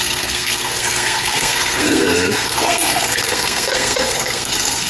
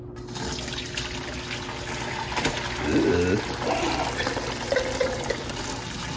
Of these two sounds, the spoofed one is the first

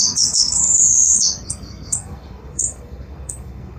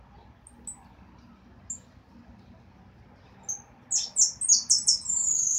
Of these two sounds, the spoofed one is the first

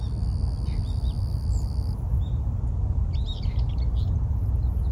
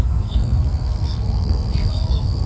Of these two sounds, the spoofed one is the second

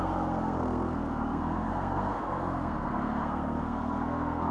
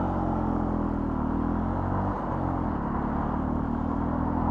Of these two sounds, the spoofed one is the first